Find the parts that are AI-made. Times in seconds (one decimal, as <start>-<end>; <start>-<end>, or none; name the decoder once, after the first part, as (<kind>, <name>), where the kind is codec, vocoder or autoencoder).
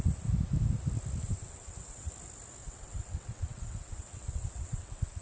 1.2-2.1 (vocoder, WaveNeXt); 2.6-5.2